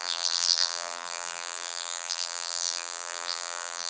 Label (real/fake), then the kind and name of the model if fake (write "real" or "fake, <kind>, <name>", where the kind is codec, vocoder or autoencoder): fake, vocoder, BigVGAN v2